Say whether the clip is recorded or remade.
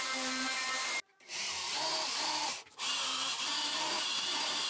remade